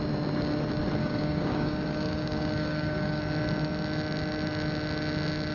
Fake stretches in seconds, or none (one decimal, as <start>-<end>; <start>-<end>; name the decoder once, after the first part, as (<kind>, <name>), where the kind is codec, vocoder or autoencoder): 1.0-3.2 (codec, DAC)